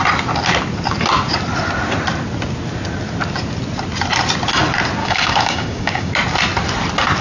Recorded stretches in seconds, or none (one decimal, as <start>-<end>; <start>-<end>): 0.0-5.0; 6.1-7.2